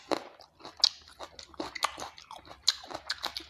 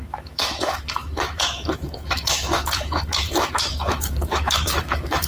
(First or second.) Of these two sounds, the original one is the first